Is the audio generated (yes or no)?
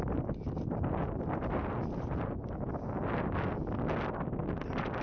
no